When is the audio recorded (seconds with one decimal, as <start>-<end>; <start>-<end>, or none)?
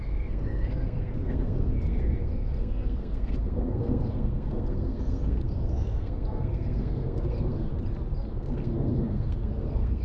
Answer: 7.7-8.3